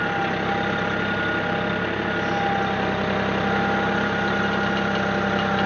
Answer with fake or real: real